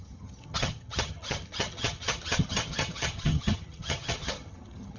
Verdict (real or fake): fake